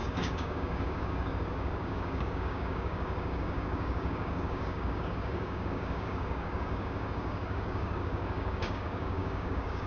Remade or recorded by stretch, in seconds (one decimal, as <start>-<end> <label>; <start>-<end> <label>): 0.0-9.9 remade